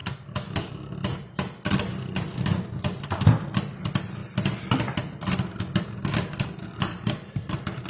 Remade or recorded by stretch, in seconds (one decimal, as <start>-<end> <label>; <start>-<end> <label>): 0.0-0.7 remade; 0.7-6.9 recorded; 6.9-7.9 remade

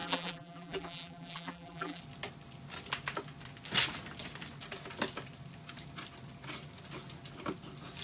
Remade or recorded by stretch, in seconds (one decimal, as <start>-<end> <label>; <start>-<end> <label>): 0.0-2.0 remade; 2.0-8.0 recorded

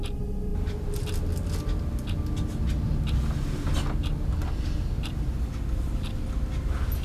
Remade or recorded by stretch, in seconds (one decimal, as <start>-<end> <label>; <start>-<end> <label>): 0.0-7.0 recorded